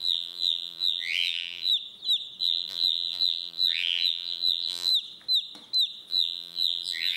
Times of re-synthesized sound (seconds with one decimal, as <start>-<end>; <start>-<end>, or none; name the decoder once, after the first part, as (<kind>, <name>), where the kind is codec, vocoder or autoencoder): 0.0-1.7 (vocoder, BigVGAN v2); 2.4-4.9; 6.1-7.2